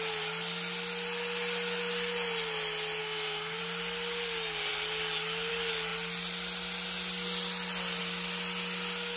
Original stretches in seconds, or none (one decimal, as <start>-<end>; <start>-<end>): 0.0-3.0; 3.6-9.2